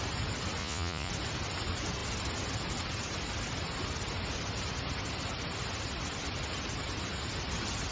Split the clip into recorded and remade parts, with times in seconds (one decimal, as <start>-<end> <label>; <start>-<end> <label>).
0.0-0.6 recorded; 0.6-1.1 remade; 1.1-7.9 recorded

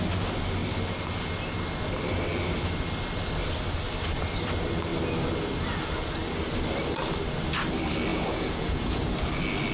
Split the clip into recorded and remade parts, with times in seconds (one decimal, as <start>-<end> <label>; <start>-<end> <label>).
0.0-8.1 recorded; 8.1-9.0 remade; 9.0-9.7 recorded

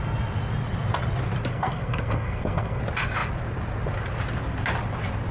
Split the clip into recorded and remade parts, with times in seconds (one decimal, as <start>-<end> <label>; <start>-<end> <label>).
0.0-1.5 recorded; 1.5-2.8 remade; 2.8-5.3 recorded

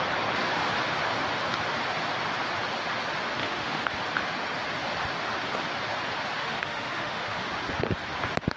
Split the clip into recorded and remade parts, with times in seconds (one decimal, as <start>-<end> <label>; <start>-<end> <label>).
0.0-3.4 recorded; 3.4-3.9 remade; 3.9-6.4 recorded; 6.4-7.4 remade; 7.4-8.6 recorded

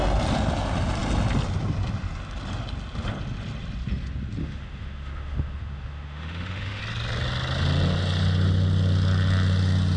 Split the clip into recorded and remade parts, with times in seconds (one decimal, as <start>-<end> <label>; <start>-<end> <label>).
0.0-4.4 recorded; 4.4-6.8 remade; 6.8-10.0 recorded

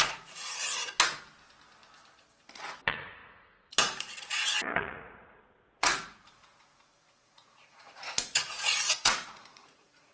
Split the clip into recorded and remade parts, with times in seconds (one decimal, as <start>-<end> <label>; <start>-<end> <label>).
0.0-0.8 remade; 0.8-2.8 recorded; 2.8-10.1 remade